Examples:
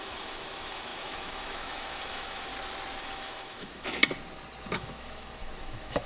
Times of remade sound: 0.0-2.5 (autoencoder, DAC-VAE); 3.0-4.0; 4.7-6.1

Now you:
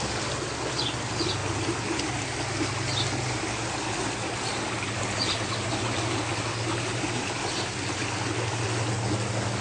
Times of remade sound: none

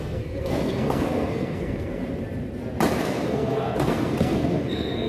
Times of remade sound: 0.0-2.0 (codec, SNAC); 3.0-5.1

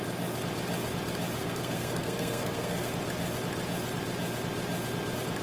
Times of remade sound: 1.4-2.9 (codec, SNAC)

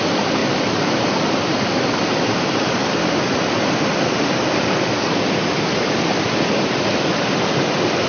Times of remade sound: none

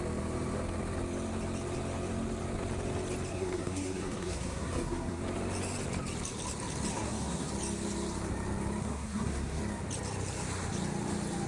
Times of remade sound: 3.3-5.2 (codec, SNAC); 6.9-7.5; 8.8-9.6